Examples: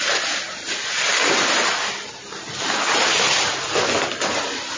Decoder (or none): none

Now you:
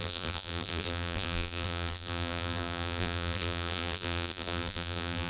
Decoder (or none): vocoder, BigVGAN v2